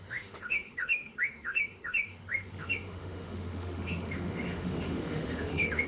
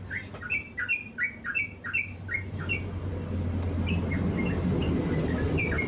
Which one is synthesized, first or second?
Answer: first